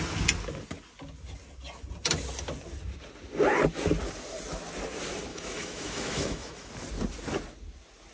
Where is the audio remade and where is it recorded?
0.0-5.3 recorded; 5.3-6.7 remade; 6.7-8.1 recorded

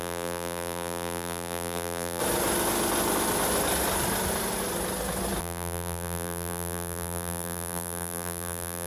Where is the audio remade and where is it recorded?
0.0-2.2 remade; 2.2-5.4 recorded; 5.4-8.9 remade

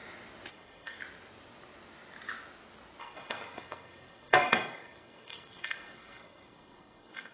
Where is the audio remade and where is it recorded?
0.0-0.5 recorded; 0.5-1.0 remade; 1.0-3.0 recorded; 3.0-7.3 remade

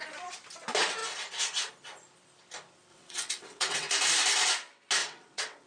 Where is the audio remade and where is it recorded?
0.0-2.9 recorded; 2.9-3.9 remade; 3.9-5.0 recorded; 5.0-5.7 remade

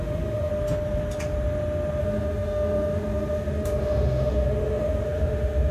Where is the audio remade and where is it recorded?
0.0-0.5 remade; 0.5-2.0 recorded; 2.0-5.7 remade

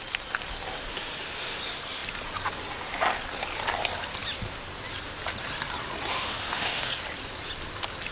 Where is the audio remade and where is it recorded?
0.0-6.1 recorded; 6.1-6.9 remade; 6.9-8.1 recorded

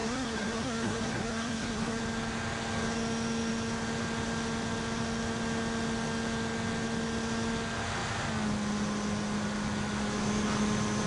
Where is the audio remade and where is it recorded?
0.0-2.0 remade; 2.0-11.1 recorded